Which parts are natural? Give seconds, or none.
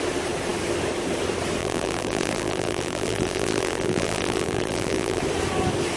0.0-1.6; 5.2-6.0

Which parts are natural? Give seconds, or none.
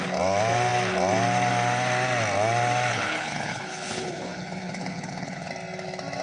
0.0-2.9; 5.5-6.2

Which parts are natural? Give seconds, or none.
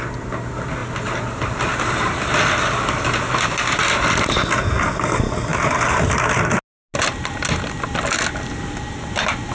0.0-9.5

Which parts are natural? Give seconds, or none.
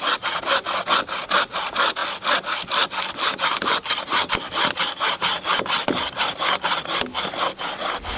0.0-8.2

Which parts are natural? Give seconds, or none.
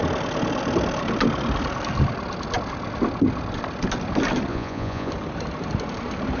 0.0-4.5; 5.1-6.4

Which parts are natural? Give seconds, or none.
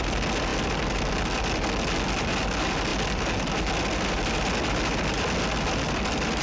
0.0-6.4